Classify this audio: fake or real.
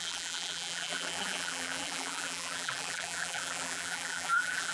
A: fake